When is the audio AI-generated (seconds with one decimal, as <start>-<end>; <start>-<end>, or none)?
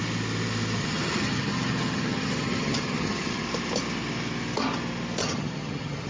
0.8-3.4; 5.2-6.1